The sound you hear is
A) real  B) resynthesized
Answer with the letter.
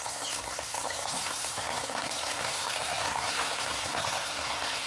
B